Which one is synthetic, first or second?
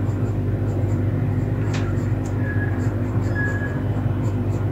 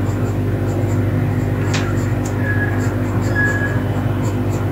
first